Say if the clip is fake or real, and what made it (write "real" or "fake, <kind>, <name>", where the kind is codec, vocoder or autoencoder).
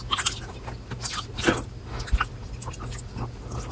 real